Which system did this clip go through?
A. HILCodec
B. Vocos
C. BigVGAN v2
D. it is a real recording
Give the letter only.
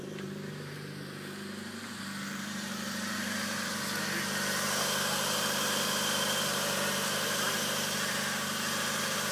C